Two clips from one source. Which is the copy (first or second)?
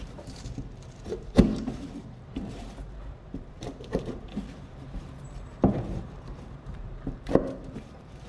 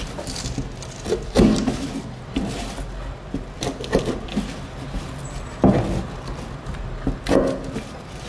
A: first